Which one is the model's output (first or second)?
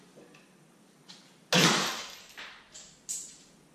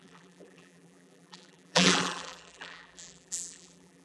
second